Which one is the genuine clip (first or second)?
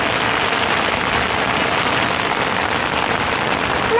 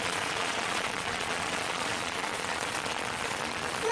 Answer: first